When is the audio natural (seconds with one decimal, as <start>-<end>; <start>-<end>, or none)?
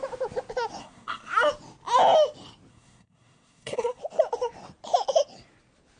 0.0-0.8; 1.3-2.7; 4.0-6.0